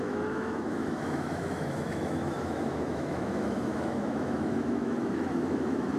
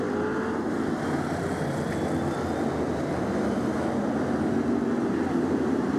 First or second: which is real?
second